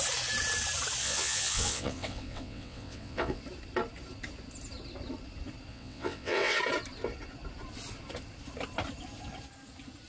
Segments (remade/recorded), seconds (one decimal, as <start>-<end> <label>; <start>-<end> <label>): 0.0-1.0 recorded; 1.0-3.4 remade; 3.4-5.7 recorded; 5.7-6.6 remade; 6.6-10.1 recorded